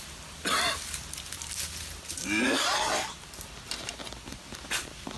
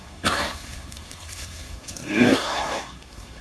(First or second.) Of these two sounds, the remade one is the second